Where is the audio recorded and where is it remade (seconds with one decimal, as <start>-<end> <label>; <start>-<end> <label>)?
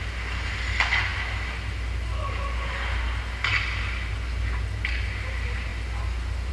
0.0-6.5 recorded